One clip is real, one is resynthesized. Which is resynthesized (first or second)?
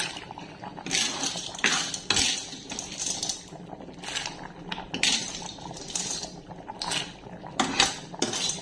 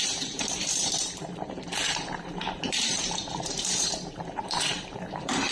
second